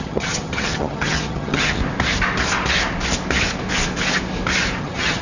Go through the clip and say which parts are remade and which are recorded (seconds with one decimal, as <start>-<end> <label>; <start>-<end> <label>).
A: 0.0-1.8 remade; 1.8-4.8 recorded; 4.8-5.2 remade